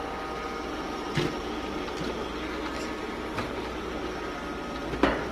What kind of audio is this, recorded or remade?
recorded